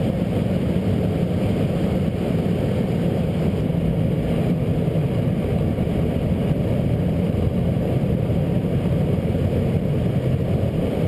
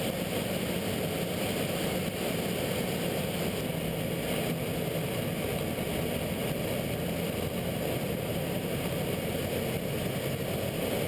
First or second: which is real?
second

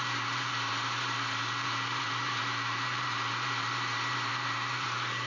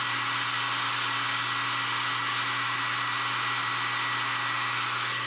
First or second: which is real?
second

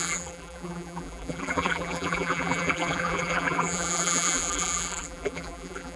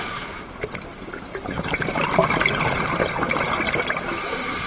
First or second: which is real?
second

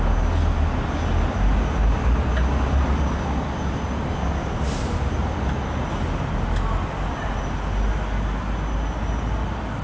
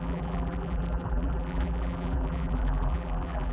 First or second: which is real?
first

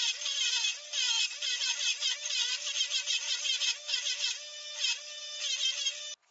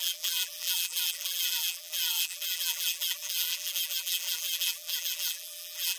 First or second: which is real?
first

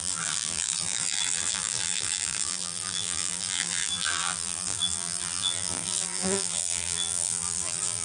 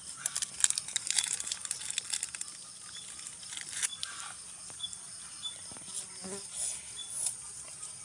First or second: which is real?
second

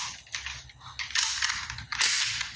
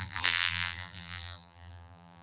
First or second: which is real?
first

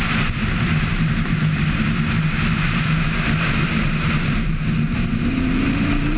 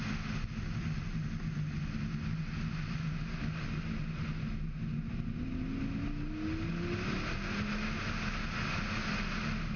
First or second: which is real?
second